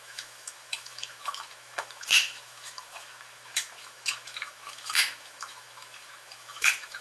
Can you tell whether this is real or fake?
fake